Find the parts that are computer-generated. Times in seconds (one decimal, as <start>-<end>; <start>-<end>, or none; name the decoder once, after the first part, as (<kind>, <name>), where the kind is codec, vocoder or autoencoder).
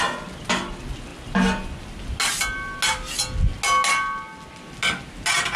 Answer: none